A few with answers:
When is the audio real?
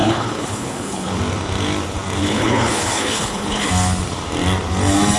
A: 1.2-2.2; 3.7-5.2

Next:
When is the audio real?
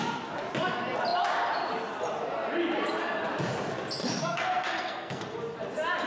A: 0.0-4.0; 5.4-6.1